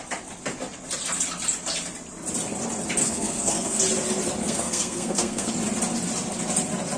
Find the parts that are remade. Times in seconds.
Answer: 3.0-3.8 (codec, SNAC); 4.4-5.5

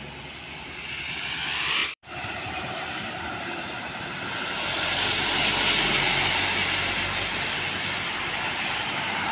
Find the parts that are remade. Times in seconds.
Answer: 1.8-3.2 (vocoder, BigVGAN v2)

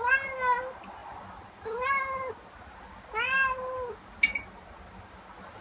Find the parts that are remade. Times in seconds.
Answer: none

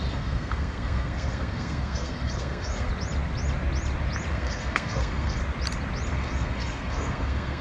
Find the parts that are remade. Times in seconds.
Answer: 0.0-2.9 (codec, SNAC); 4.3-5.4; 6.1-7.6

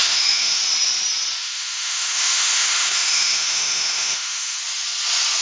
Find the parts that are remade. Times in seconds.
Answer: 0.0-0.6 (autoencoder, DAC-VAE); 1.4-4.6

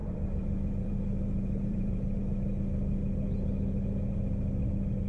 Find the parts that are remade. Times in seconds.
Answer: 0.0-2.2 (vocoder, BigVGAN v2)

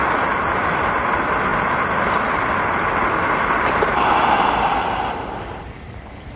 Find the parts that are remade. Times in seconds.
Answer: 0.7-1.5 (vocoder, BigVGAN v2); 3.6-6.4

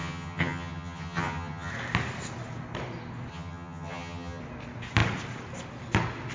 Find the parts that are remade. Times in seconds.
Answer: 0.0-1.7 (vocoder, HiFi-GAN); 3.3-4.4